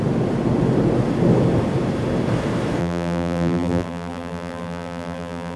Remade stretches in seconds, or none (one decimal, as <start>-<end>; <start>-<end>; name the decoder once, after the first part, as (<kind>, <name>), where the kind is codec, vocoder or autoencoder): 2.8-5.6 (vocoder, BigVGAN v2)